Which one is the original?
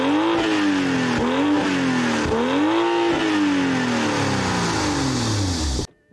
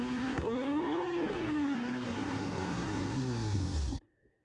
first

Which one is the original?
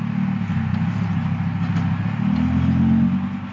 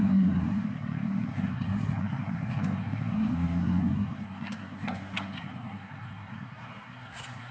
first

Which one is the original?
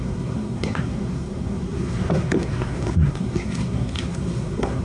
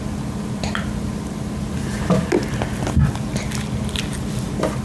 second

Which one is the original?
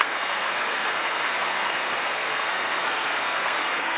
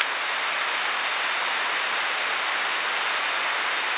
second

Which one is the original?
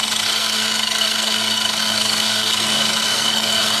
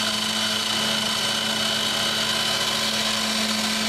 second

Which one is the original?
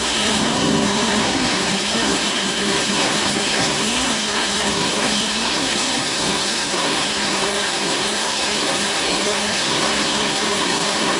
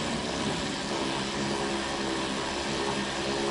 second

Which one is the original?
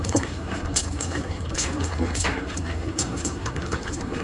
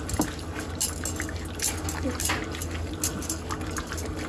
second